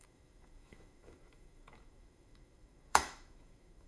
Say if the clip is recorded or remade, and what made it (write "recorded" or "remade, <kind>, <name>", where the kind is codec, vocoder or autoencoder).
remade, autoencoder, DAC-VAE